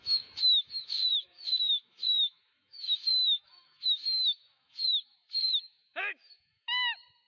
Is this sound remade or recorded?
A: remade